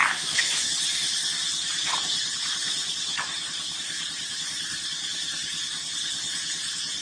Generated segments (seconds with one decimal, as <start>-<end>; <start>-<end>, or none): 0.0-0.7